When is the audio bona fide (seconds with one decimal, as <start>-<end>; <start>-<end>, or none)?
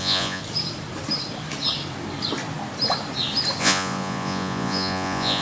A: 0.4-3.6